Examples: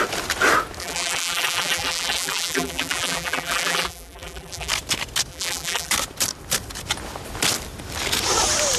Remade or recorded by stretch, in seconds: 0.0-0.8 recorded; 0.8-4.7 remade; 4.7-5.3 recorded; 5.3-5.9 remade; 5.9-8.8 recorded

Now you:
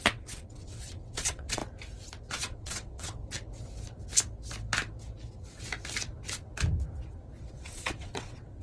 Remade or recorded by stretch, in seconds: 0.0-1.6 remade; 1.6-2.3 recorded; 2.3-3.2 remade; 3.2-7.5 recorded; 7.5-8.6 remade

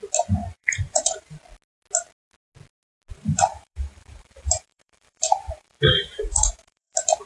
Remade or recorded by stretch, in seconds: 0.0-0.4 recorded; 0.4-1.4 remade; 1.4-3.1 recorded; 3.1-7.3 remade

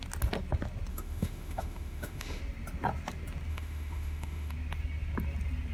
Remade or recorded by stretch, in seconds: 0.0-0.9 recorded; 0.9-2.4 remade; 2.4-3.5 recorded; 3.5-4.5 remade; 4.5-5.7 recorded

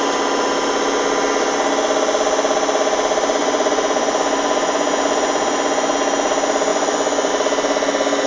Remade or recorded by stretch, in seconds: 0.0-3.4 recorded; 3.4-5.9 remade; 5.9-6.7 recorded; 6.7-7.3 remade; 7.3-8.3 recorded

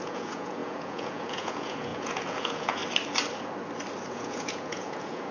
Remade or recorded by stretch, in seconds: 0.0-2.8 remade; 2.8-4.1 recorded; 4.1-5.3 remade

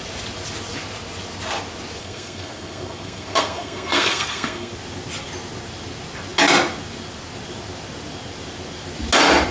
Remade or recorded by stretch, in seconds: 0.0-2.0 recorded; 2.0-4.7 remade; 4.7-9.5 recorded

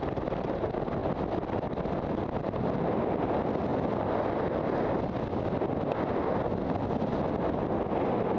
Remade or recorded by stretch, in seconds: 0.0-8.4 recorded